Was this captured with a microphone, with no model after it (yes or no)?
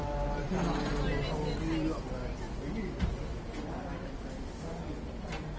yes